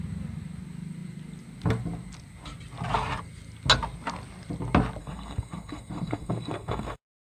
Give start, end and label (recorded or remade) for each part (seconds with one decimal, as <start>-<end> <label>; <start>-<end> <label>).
0.0-5.0 recorded; 5.0-7.3 remade